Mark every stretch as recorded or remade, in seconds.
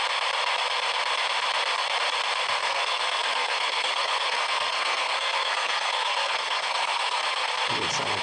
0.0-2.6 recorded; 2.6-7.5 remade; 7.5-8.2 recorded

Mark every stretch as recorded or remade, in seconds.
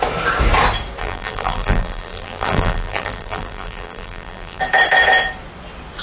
0.0-1.0 recorded; 1.0-4.6 remade; 4.6-6.0 recorded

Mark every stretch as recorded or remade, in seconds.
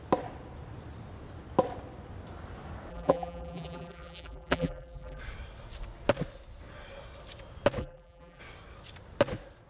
0.0-2.9 recorded; 2.9-5.2 remade; 5.2-7.8 recorded; 7.8-8.4 remade; 8.4-9.7 recorded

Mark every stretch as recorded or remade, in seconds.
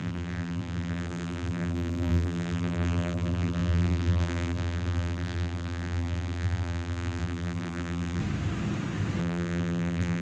0.0-8.2 remade; 8.2-9.2 recorded; 9.2-10.2 remade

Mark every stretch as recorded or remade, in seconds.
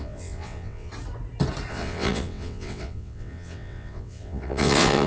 0.0-0.9 remade; 0.9-1.7 recorded; 1.7-5.1 remade